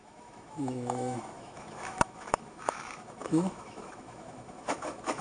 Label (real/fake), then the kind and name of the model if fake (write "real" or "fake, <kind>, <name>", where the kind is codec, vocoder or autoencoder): fake, autoencoder, DAC-VAE